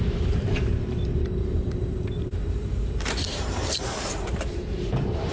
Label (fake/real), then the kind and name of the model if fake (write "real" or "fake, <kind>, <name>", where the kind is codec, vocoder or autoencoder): fake, vocoder, BigVGAN v2